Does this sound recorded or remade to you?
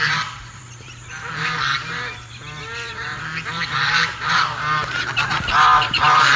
remade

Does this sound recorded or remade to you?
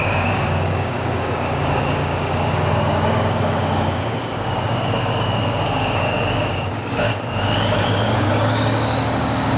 remade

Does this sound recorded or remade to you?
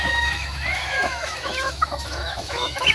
remade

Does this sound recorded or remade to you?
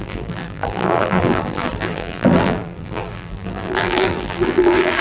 remade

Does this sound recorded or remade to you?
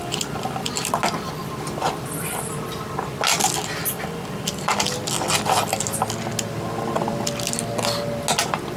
recorded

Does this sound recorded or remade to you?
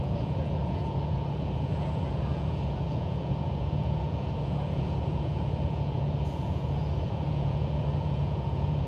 remade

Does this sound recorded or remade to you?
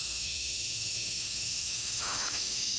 remade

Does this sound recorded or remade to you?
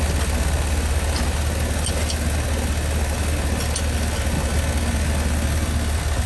recorded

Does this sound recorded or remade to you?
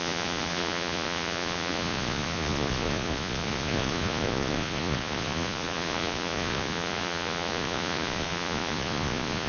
remade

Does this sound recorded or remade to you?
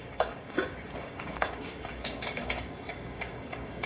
remade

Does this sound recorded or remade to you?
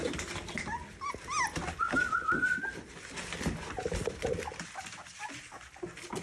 recorded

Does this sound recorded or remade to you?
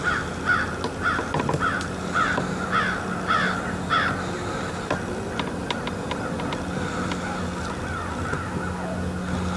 recorded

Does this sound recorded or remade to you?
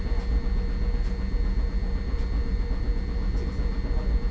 recorded